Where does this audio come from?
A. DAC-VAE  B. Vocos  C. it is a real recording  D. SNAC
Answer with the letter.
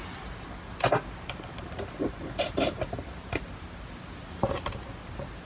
C